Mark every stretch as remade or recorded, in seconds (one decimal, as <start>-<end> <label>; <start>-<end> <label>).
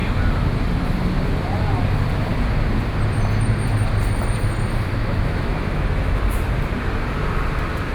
0.0-5.0 recorded; 5.0-6.2 remade; 6.2-7.9 recorded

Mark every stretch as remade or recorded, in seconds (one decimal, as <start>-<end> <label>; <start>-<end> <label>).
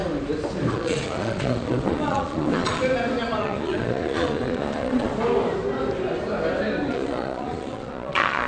0.0-0.7 recorded; 0.7-2.8 remade; 2.8-3.4 recorded; 3.4-5.1 remade; 5.1-6.9 recorded; 6.9-8.5 remade